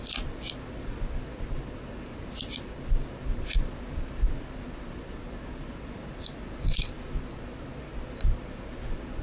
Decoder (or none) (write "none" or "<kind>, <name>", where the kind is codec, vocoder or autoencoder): none